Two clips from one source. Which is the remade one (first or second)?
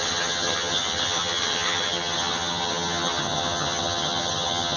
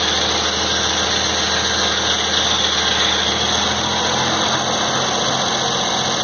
first